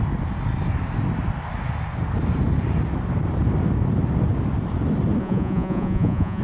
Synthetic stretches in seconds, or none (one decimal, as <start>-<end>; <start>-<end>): 5.2-6.4